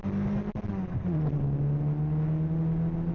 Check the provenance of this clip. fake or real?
real